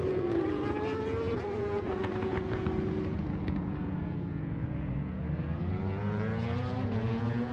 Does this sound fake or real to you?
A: fake